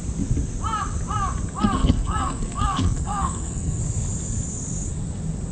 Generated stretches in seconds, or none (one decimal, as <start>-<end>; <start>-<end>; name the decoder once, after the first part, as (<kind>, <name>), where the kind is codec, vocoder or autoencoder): 1.8-3.8 (codec, SNAC)